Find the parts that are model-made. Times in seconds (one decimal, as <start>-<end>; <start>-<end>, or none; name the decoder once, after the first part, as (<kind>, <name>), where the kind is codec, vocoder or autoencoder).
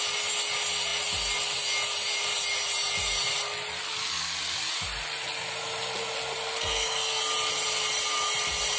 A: 6.6-7.2 (codec, SNAC)